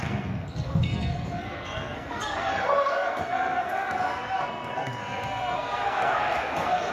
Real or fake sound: fake